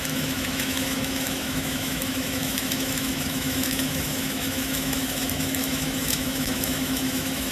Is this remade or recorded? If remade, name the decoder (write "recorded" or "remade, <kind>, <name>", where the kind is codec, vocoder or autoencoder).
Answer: remade, autoencoder, DAC-VAE